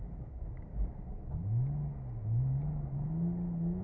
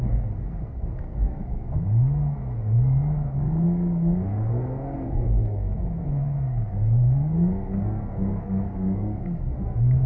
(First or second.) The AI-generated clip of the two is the second